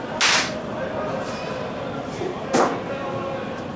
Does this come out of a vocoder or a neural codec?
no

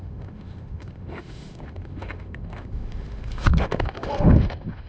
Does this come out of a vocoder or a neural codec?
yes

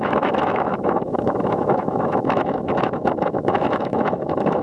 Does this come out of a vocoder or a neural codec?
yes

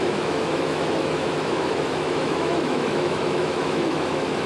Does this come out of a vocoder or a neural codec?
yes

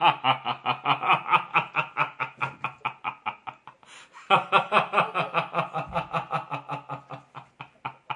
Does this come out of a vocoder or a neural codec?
no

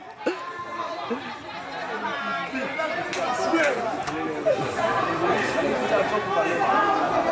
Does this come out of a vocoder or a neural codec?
no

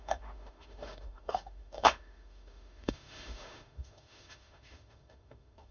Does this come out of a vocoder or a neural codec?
yes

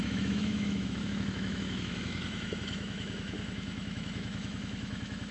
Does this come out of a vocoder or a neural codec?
yes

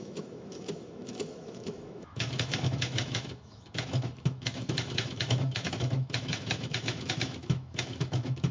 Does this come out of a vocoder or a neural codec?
yes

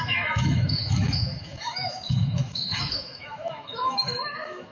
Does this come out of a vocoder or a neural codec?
yes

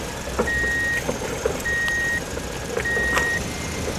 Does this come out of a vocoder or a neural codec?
no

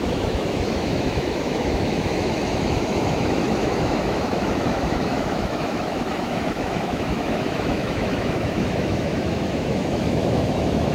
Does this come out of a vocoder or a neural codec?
yes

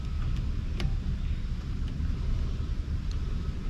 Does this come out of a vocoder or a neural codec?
no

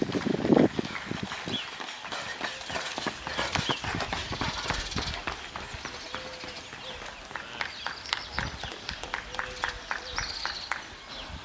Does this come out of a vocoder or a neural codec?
no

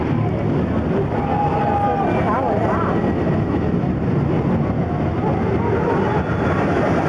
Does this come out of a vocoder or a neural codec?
no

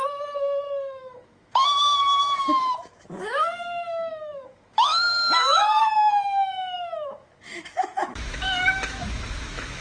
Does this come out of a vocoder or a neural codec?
yes